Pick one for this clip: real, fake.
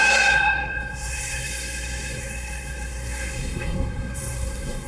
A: fake